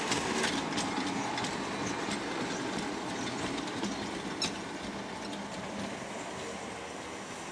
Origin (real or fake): real